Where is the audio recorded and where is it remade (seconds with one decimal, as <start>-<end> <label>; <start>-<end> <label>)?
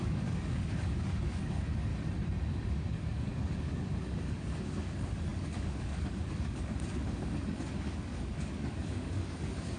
0.0-1.9 remade; 1.9-2.5 recorded; 2.5-9.8 remade